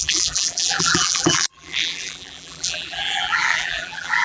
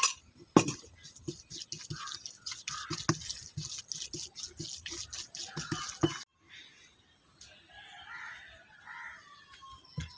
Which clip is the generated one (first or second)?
first